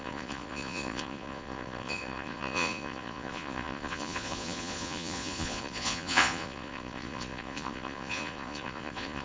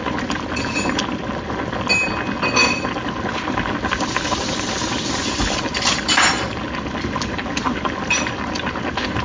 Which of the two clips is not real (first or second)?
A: first